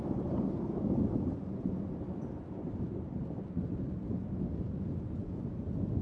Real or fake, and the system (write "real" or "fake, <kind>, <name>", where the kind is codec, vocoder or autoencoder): real